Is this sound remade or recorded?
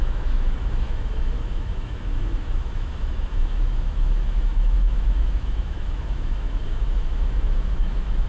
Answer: remade